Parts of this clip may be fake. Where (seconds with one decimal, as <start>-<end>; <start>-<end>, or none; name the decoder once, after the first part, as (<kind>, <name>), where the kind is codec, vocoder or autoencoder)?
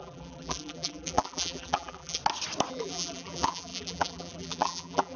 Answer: 0.0-2.2 (vocoder, BigVGAN v2); 2.7-5.2